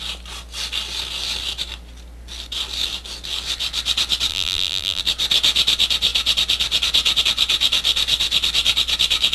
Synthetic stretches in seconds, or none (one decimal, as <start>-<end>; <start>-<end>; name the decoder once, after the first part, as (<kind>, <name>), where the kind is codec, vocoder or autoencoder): 4.3-5.0 (vocoder, BigVGAN v2)